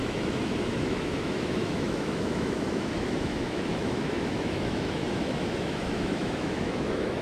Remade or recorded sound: remade